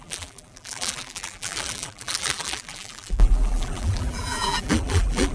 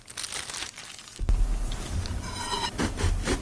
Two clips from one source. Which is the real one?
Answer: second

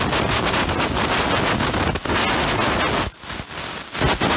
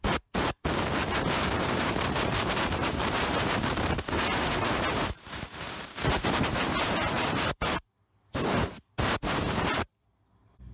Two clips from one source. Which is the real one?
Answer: first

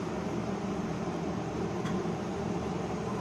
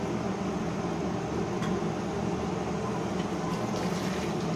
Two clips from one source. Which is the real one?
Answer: second